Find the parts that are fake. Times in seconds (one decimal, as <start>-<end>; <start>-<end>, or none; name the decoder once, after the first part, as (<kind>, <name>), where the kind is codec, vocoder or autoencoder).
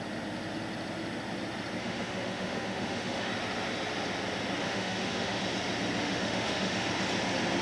1.8-3.3 (autoencoder, DAC-VAE); 4.6-5.4; 6.0-6.9